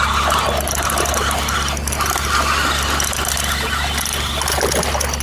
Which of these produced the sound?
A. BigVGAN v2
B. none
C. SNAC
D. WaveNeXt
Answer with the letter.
B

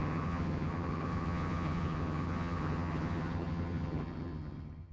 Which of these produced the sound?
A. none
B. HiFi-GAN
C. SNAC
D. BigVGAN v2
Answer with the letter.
B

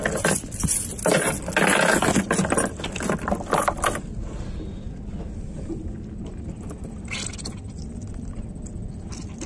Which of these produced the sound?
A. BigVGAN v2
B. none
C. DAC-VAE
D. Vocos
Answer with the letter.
B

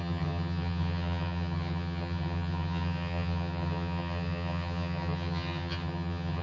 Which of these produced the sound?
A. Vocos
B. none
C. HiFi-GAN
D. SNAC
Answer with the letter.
C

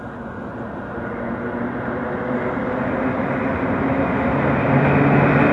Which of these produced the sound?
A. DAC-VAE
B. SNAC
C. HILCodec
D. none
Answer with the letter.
D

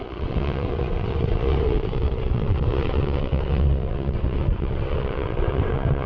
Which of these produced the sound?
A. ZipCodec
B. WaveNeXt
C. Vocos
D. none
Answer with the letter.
B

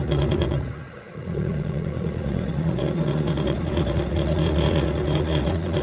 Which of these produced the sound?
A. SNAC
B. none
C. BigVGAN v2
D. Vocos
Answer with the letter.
D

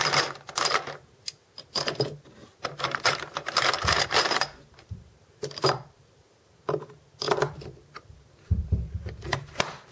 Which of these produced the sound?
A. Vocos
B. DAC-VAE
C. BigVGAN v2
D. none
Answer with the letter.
C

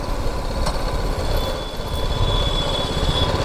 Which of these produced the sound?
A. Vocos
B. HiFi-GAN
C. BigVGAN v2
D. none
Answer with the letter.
D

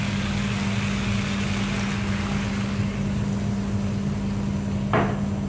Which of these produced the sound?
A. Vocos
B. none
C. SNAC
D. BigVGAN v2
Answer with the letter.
B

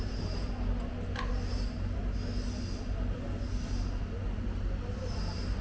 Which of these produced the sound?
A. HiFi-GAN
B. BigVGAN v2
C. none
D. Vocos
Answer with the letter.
C